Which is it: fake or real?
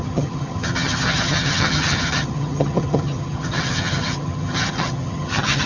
fake